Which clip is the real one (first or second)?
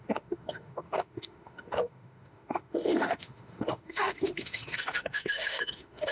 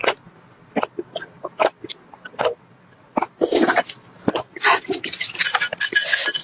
second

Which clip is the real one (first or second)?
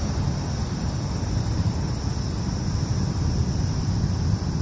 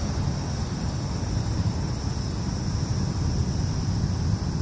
second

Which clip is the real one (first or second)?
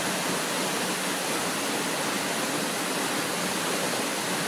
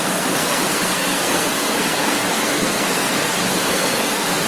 first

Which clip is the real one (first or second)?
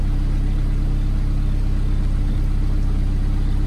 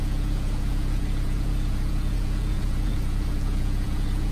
first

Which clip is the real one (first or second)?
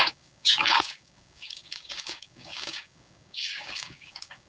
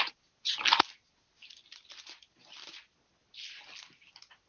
second